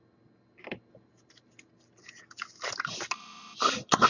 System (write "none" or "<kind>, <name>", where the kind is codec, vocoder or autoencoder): none